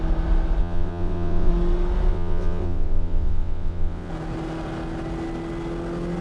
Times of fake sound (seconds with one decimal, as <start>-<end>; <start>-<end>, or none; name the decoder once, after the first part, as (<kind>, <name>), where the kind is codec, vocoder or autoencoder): 0.6-1.5 (vocoder, WaveNeXt); 2.1-4.1